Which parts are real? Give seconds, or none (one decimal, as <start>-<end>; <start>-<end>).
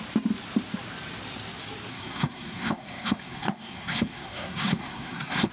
0.0-1.9